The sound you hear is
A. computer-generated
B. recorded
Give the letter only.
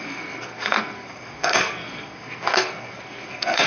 A